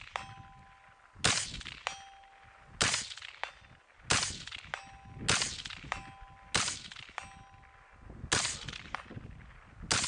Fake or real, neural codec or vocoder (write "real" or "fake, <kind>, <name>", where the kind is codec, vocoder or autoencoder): real